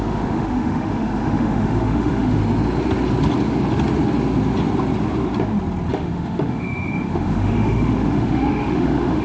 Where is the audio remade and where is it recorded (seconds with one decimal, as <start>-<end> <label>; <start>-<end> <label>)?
0.0-2.4 remade; 2.4-5.9 recorded; 5.9-9.2 remade